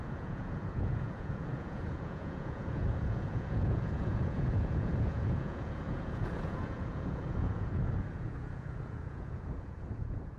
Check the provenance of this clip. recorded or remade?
remade